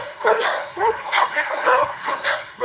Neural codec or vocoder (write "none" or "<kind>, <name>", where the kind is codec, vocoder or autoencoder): codec, SNAC